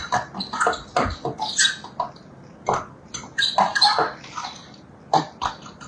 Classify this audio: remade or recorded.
recorded